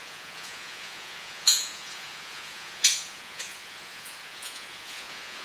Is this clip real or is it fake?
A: fake